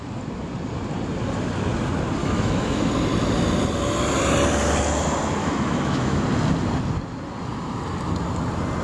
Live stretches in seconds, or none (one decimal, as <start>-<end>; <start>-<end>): 0.0-2.2; 2.9-5.4; 6.2-8.8